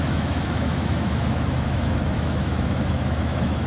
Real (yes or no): no